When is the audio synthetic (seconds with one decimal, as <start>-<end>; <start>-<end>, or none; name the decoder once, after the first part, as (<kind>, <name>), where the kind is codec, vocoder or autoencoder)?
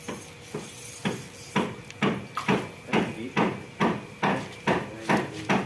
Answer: none